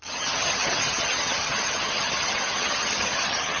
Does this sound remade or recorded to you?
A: remade